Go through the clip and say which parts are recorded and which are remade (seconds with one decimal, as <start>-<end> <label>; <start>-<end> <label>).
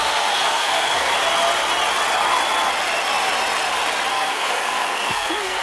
0.0-1.1 remade; 1.1-4.1 recorded; 4.1-5.6 remade